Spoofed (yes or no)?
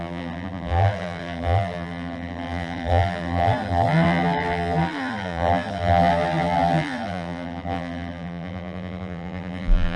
yes